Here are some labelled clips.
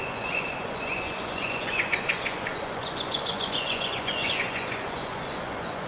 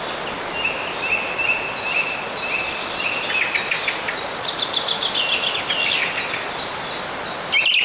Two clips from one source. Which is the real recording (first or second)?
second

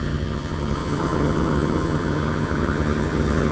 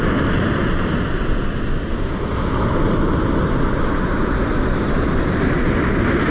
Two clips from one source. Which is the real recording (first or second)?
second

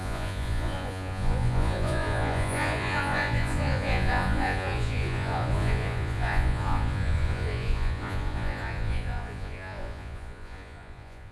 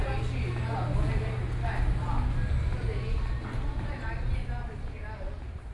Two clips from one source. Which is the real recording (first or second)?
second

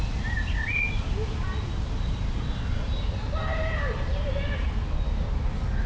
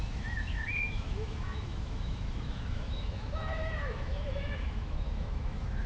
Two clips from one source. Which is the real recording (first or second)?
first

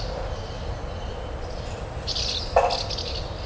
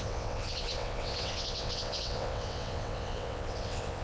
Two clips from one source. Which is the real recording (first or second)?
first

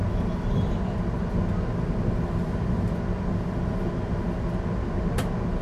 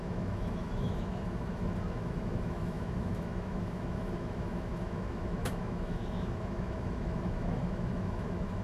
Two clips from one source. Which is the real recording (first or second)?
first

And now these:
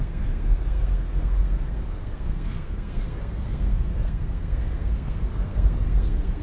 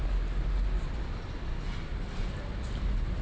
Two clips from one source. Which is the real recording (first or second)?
second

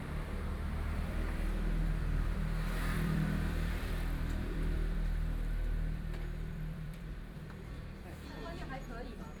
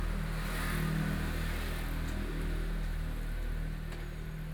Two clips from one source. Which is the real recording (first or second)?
second